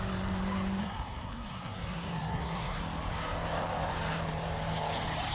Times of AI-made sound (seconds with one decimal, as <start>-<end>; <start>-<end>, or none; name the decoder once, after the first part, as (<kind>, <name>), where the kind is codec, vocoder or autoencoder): 0.8-2.8 (codec, SNAC)